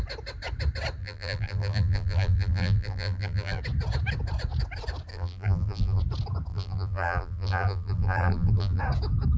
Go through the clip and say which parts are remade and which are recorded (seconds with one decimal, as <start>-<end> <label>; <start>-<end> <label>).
0.0-1.0 recorded; 1.0-3.6 remade; 3.6-5.1 recorded; 5.1-6.0 remade; 6.0-6.5 recorded; 6.5-8.8 remade; 8.8-9.4 recorded